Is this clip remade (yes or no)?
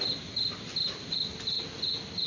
no